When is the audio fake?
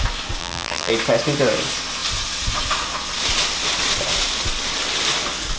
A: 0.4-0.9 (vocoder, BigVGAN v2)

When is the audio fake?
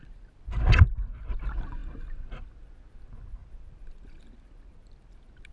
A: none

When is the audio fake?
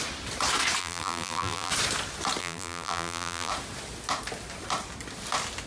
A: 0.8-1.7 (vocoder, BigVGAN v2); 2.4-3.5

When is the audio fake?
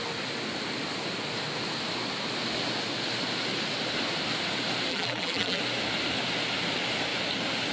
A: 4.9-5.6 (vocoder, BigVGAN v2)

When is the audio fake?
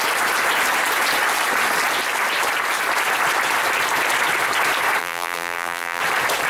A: 5.0-6.0 (vocoder, BigVGAN v2)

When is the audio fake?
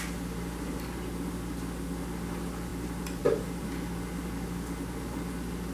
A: none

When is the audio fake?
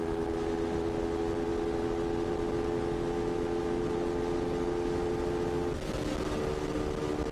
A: none